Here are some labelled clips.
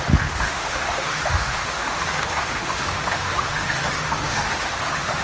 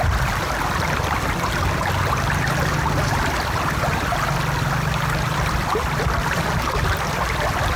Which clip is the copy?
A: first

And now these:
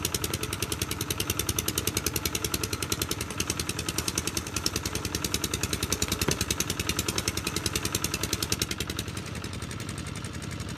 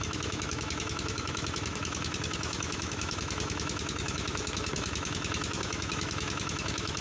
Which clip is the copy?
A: second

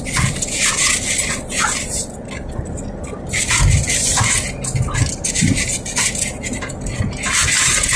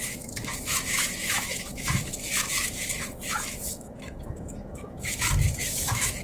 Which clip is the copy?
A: second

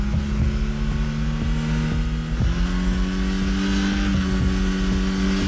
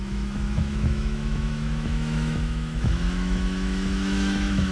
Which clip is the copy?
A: second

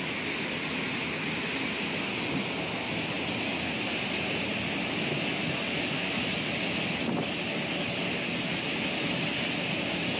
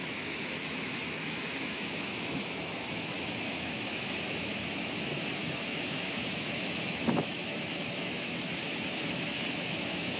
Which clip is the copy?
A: second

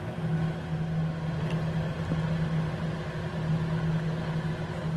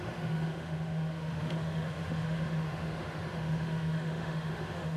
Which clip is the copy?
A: second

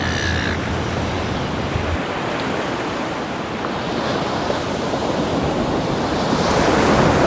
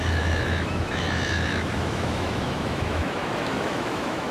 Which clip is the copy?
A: second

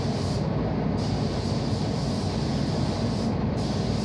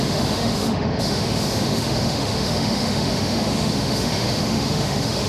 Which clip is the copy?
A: second